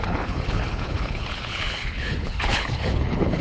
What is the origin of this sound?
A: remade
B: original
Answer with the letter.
A